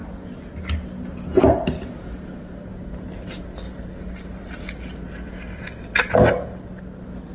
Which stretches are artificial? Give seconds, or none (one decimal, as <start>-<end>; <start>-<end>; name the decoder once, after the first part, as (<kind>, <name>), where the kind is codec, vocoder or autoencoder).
none